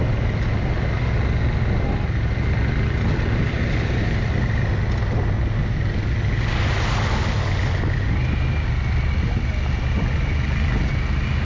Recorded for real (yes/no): yes